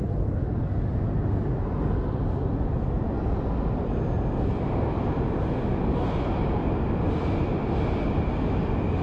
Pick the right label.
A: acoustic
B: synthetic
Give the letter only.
A